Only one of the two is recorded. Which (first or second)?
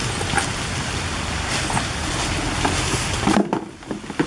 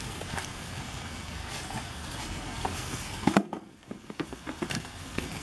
first